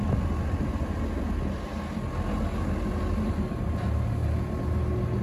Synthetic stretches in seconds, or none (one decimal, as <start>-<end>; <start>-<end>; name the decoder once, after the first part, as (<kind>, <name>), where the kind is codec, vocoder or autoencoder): none